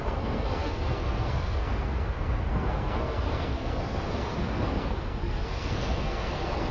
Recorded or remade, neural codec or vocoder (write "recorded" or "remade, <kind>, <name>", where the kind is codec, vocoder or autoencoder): remade, codec, SNAC